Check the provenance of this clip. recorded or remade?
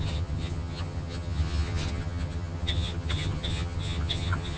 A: remade